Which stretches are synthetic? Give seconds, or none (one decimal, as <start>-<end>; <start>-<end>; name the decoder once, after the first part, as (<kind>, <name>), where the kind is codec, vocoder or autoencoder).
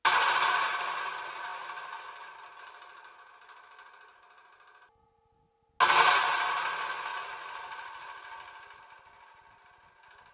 7.1-8.8 (vocoder, BigVGAN v2)